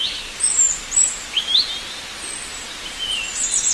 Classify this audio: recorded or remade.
recorded